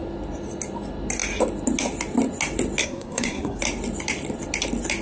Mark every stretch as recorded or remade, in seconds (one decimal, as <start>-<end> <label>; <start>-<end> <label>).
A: 0.0-2.8 recorded; 2.8-3.6 remade; 3.6-5.0 recorded